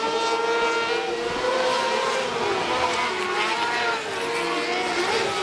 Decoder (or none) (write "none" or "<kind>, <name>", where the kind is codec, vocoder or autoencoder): none